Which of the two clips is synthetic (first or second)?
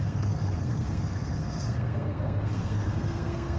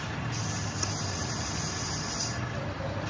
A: first